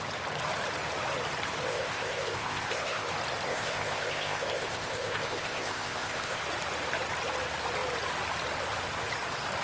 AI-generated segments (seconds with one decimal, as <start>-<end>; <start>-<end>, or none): 1.7-3.1; 3.5-6.4